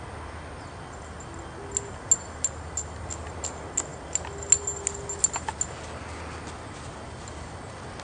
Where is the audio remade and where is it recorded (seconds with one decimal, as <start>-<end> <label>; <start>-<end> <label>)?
0.0-8.0 recorded

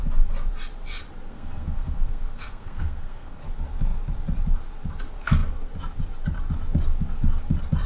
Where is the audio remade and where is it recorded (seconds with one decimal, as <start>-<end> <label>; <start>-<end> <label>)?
0.0-1.3 recorded; 1.3-3.4 remade; 3.4-7.9 recorded

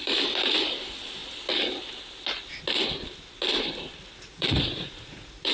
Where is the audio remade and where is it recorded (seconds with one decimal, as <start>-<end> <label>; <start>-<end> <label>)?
0.0-4.3 recorded; 4.3-5.5 remade